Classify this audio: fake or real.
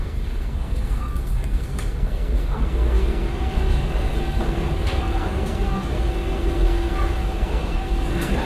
fake